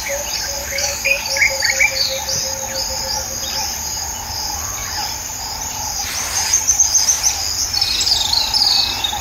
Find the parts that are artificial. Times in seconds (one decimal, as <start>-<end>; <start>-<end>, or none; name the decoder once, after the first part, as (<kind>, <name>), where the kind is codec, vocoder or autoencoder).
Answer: 0.6-1.2 (codec, DAC)